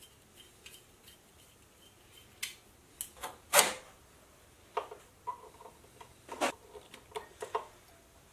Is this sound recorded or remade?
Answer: recorded